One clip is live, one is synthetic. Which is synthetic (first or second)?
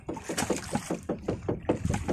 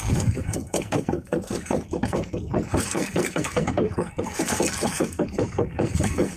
second